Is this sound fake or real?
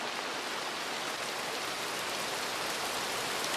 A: real